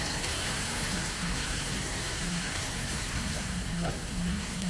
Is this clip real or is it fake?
fake